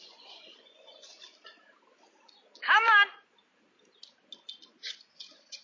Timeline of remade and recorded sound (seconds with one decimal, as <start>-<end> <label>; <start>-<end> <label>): 0.0-1.3 remade; 1.3-4.7 recorded; 4.7-5.6 remade

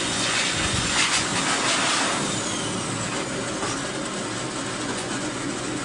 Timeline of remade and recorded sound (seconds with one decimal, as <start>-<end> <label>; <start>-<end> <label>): 0.0-1.3 remade; 1.3-4.8 recorded; 4.8-5.8 remade

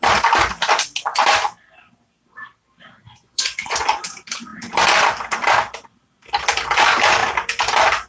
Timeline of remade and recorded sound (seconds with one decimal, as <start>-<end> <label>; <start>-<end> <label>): 0.0-3.0 recorded; 3.0-3.9 remade; 3.9-8.1 recorded

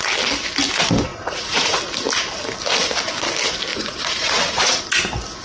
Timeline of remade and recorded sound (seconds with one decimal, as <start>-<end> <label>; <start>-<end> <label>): 0.0-1.1 recorded; 1.1-1.8 remade; 1.8-3.7 recorded; 3.7-4.8 remade; 4.8-5.4 recorded

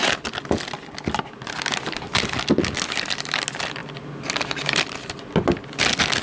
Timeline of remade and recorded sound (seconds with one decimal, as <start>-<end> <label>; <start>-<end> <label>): 0.0-6.2 recorded

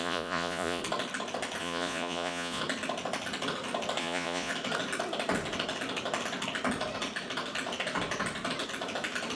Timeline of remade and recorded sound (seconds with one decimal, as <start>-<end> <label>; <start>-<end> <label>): 0.0-0.8 remade; 0.8-1.6 recorded; 1.6-2.6 remade; 2.6-4.0 recorded; 4.0-4.5 remade; 4.5-9.4 recorded

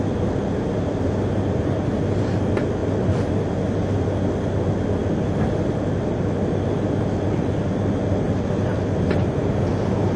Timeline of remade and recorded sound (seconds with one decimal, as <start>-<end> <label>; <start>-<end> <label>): 0.0-10.2 recorded

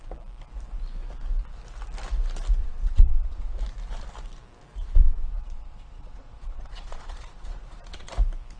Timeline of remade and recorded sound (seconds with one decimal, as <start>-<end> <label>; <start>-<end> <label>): 0.0-2.6 recorded; 2.6-3.6 remade; 3.6-4.8 recorded; 4.8-8.1 remade; 8.1-8.6 recorded